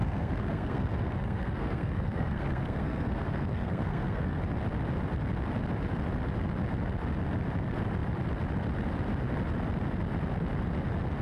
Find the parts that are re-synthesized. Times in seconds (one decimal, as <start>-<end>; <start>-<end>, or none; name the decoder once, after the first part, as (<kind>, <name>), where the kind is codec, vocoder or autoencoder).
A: 0.0-4.4 (codec, SNAC)